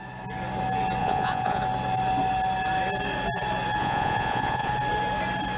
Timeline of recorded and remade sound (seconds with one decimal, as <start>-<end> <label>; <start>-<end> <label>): 0.0-1.0 recorded; 1.0-1.6 remade; 1.6-3.8 recorded; 3.8-4.7 remade; 4.7-5.6 recorded